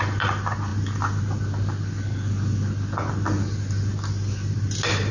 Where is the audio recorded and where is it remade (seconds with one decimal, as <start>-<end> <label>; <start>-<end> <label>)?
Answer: 0.0-5.1 recorded